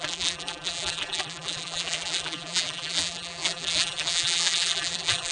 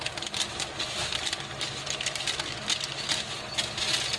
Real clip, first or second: second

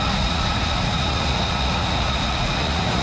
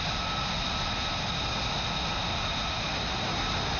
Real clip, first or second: second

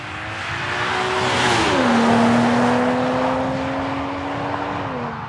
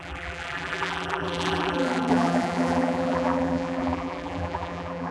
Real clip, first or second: first